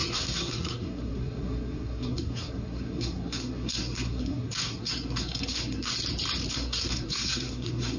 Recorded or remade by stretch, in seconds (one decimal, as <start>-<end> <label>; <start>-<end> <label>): 0.0-5.9 remade; 5.9-6.5 recorded; 6.5-8.0 remade